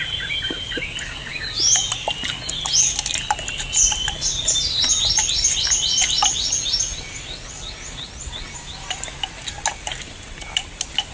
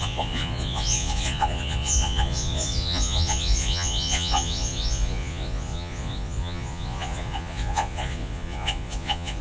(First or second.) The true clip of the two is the first